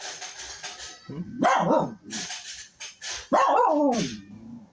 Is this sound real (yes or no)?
no